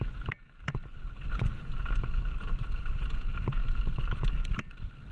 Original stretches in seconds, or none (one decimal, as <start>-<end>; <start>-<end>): 0.0-5.1